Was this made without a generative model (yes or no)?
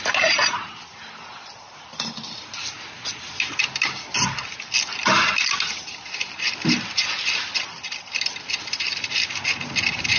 yes